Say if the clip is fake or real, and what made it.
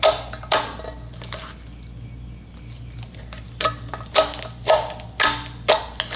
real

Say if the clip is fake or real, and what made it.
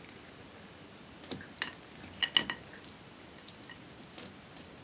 real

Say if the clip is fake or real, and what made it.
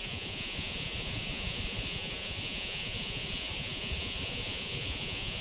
fake, vocoder, Vocos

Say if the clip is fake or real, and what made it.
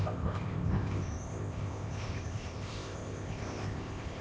fake, codec, ZipCodec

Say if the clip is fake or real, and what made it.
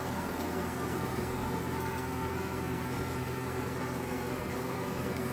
fake, codec, SNAC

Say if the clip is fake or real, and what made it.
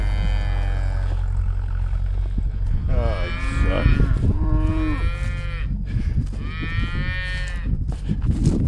real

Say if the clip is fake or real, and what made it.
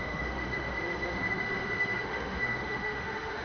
fake, autoencoder, DAC-VAE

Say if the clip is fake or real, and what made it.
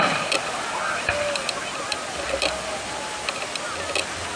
real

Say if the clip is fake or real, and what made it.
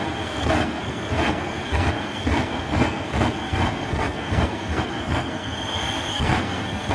fake, codec, SNAC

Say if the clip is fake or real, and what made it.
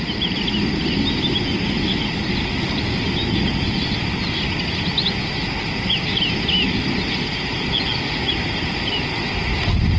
real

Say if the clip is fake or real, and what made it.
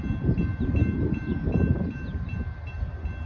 real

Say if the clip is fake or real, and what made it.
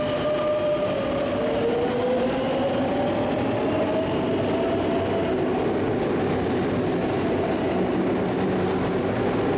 real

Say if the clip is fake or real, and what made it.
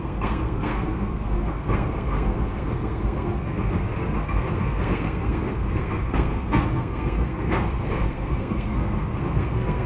fake, codec, SNAC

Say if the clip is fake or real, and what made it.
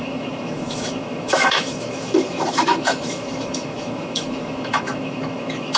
fake, autoencoder, DAC-VAE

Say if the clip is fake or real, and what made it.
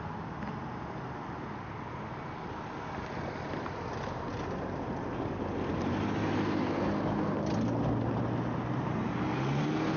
real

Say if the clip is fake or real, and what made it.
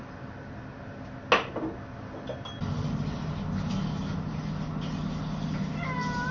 real